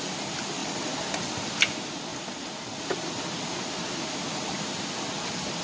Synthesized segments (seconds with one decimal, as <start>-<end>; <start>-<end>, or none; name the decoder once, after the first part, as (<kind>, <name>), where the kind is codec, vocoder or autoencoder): none

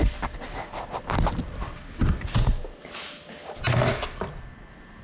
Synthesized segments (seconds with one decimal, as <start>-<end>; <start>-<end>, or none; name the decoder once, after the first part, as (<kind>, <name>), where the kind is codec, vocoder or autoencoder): none

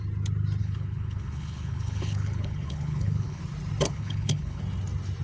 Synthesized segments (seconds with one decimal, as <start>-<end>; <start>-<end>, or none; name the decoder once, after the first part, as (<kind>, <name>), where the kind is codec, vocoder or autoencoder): 0.6-3.4 (codec, HILCodec); 3.9-4.6